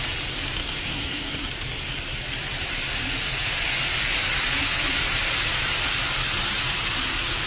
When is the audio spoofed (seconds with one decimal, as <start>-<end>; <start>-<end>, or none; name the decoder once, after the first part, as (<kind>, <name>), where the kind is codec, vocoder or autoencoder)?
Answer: 0.6-1.5 (codec, SNAC)